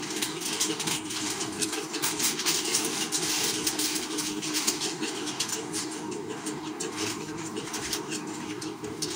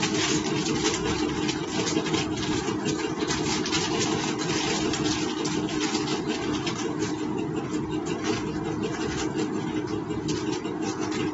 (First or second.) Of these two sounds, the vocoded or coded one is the first